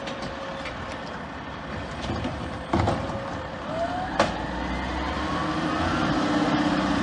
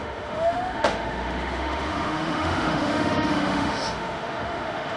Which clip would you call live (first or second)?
first